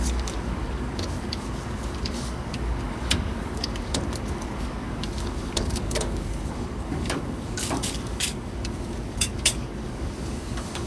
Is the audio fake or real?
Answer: fake